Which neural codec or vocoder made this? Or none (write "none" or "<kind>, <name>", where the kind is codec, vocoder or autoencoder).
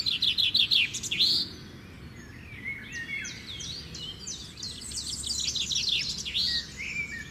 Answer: none